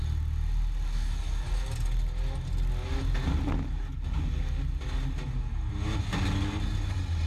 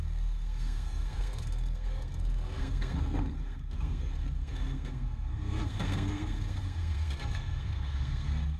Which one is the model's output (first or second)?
second